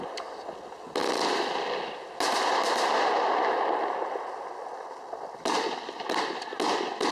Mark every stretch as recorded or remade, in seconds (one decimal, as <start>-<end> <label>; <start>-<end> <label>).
0.0-7.1 recorded

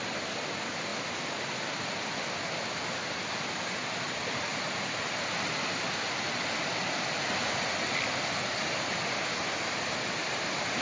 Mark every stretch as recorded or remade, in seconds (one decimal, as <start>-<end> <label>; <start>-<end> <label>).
0.0-0.9 recorded; 0.9-3.3 remade; 3.3-4.5 recorded; 4.5-5.0 remade; 5.0-10.8 recorded

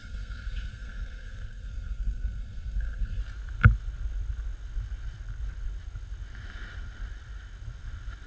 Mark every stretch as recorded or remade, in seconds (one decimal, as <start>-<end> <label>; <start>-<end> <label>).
0.0-3.2 remade; 3.2-8.3 recorded

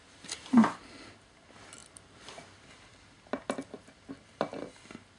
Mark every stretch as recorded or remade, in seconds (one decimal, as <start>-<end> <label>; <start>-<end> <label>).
0.0-5.2 recorded

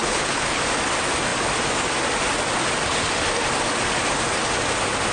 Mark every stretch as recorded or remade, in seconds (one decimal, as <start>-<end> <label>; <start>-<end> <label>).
0.0-0.6 remade; 0.6-5.1 recorded

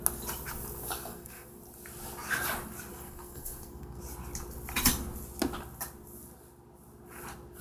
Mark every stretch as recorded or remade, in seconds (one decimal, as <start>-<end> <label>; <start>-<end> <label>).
0.0-0.8 recorded; 0.8-1.6 remade; 1.6-2.9 recorded; 2.9-4.0 remade; 4.0-7.6 recorded